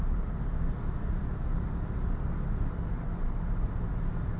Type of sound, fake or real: real